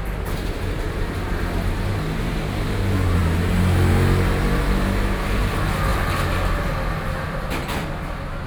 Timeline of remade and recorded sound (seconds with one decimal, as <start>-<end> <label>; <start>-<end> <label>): 0.0-8.5 recorded